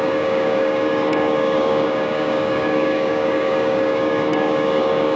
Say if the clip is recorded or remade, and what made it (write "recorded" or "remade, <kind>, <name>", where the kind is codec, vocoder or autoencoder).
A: remade, codec, DAC